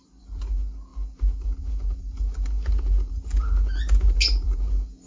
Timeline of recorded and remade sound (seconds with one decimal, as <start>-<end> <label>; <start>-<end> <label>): 0.0-5.1 recorded